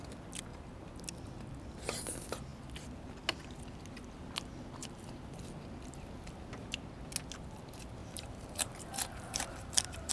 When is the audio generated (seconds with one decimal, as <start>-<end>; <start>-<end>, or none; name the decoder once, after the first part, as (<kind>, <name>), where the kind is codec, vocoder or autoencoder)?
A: 0.5-1.0 (vocoder, BigVGAN v2); 4.8-5.4; 8.0-10.1